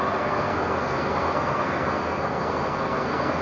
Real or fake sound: fake